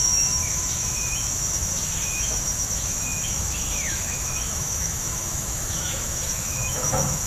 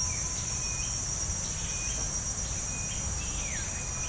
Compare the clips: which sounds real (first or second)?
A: second